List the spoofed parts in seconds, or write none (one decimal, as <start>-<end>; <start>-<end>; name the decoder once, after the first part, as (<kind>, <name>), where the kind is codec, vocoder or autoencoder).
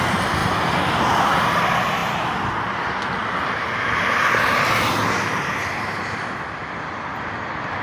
0.0-0.4 (vocoder, BigVGAN v2); 1.0-2.0; 2.5-7.8